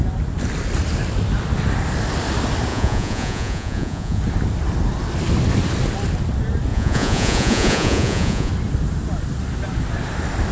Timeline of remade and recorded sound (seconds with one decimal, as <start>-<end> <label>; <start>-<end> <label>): 0.0-2.7 recorded; 2.7-4.2 remade; 4.2-6.7 recorded; 6.7-8.5 remade; 8.5-10.5 recorded